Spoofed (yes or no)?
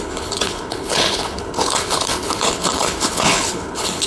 yes